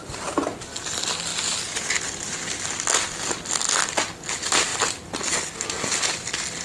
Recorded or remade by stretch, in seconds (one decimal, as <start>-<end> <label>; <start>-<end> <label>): 0.0-6.6 recorded